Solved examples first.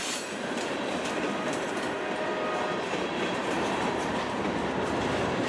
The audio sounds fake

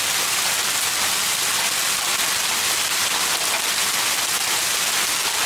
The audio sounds real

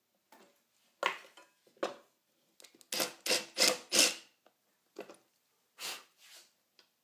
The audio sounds real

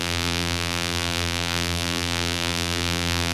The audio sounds fake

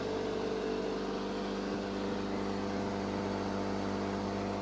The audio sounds real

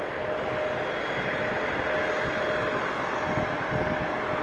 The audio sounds real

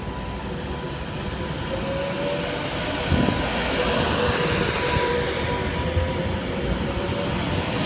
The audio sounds real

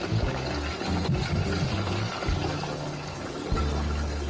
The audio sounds real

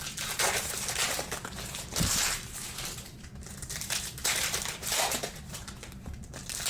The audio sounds fake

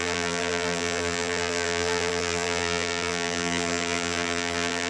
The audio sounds fake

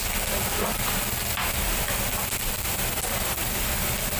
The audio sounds real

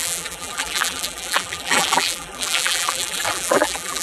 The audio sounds fake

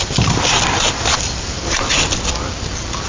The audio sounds real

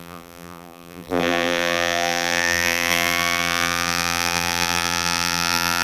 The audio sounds fake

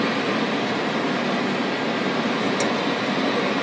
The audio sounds real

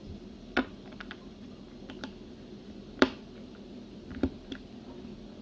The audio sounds fake